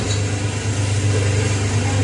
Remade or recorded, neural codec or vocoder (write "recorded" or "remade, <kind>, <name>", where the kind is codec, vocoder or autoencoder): recorded